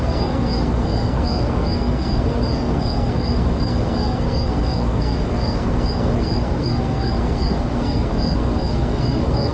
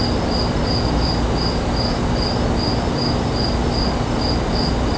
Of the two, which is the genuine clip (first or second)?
second